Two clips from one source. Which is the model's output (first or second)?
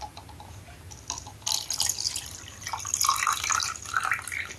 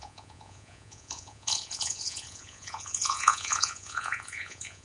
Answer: second